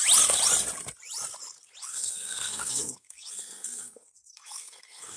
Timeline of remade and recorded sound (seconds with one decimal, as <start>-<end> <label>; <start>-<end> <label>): 0.0-1.8 recorded; 1.8-5.2 remade